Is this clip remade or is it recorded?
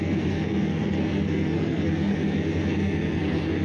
remade